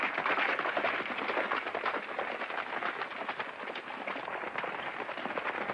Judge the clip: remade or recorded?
recorded